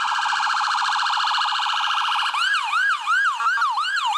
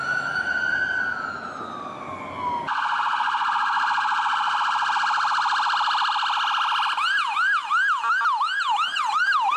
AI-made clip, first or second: first